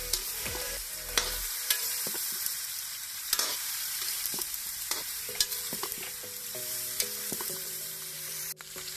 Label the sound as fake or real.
fake